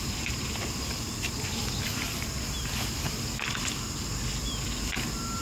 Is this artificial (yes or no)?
no